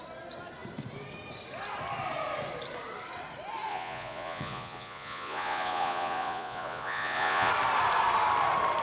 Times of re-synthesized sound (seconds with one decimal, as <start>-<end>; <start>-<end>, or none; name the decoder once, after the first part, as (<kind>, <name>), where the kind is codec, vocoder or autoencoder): 3.7-7.5 (vocoder, Vocos)